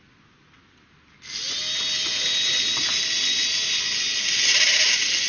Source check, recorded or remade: recorded